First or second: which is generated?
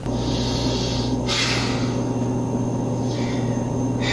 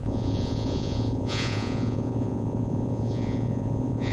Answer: second